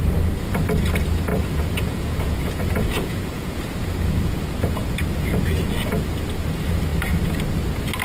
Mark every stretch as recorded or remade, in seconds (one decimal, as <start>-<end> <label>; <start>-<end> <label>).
0.0-1.3 recorded; 1.3-4.9 remade; 4.9-8.0 recorded